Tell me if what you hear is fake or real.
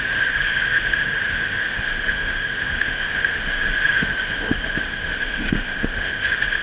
fake